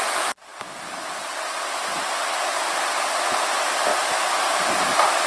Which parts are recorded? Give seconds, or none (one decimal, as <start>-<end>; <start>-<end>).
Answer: 0.0-0.5; 3.4-5.3